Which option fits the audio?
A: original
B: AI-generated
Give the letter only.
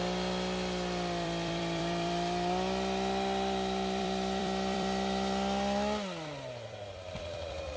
B